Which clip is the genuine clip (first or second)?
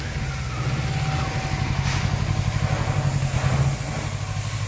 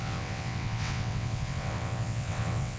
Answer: first